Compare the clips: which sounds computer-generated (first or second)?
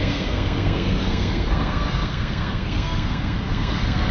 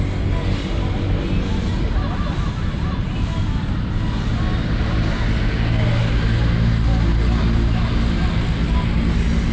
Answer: first